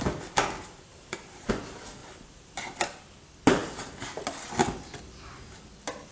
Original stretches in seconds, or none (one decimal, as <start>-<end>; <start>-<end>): 0.0-0.9; 1.5-2.0; 3.0-6.1